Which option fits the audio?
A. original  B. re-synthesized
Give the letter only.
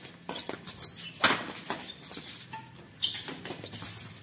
A